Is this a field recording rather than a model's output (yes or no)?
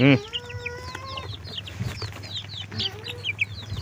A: yes